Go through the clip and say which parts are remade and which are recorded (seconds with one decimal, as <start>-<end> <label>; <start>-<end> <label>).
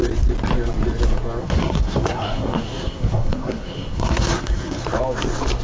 0.0-1.4 recorded; 1.4-4.8 remade; 4.8-5.6 recorded